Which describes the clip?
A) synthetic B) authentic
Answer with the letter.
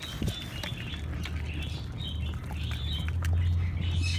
B